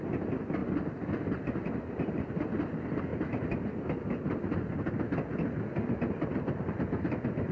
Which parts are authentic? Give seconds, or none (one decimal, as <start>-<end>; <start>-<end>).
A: 0.0-7.5